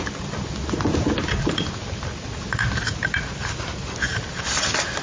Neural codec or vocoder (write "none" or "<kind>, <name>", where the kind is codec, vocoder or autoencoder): none